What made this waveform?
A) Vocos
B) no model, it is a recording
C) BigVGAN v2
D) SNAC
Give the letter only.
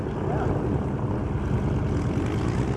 B